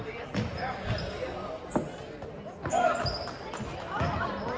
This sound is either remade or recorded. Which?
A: recorded